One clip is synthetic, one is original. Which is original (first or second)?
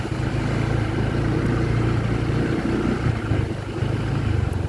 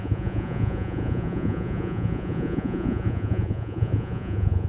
first